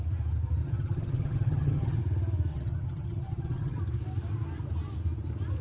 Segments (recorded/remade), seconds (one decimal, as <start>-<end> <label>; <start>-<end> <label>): 0.0-0.6 recorded; 0.6-2.0 remade; 2.0-2.5 recorded; 2.5-3.8 remade; 3.8-5.6 recorded